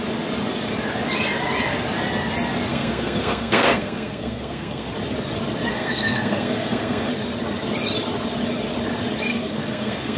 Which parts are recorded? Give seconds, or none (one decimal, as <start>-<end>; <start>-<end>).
0.0-2.7; 4.9-5.7; 7.1-9.3